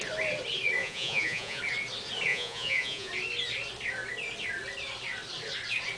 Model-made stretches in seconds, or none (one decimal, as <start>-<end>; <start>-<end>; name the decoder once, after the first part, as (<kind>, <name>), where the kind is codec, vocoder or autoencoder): 0.8-1.6 (vocoder, Vocos); 2.3-3.1